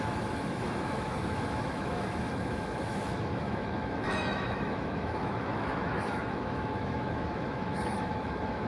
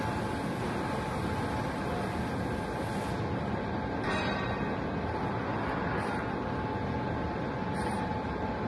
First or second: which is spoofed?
first